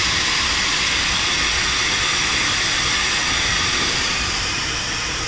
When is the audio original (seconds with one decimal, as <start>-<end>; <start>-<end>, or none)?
0.0-3.5